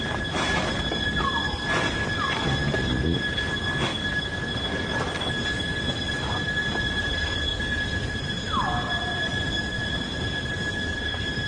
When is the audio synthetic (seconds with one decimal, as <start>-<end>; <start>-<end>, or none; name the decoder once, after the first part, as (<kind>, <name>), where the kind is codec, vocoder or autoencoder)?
none